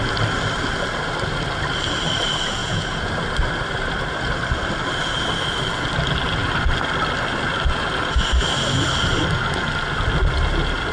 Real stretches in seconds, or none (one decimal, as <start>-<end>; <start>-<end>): 0.0-2.6; 3.1-10.9